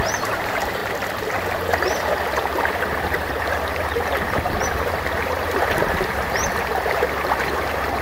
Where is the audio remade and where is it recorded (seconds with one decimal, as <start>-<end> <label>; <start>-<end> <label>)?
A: 0.0-0.8 remade; 0.8-1.5 recorded; 1.5-8.0 remade